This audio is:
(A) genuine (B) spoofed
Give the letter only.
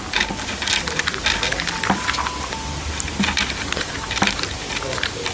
A